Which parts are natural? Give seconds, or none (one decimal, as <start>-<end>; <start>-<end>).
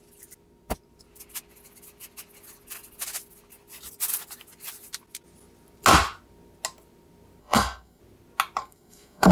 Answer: 0.0-7.4; 8.0-8.6